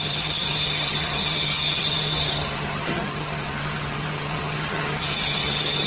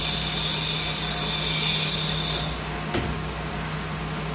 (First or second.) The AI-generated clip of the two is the first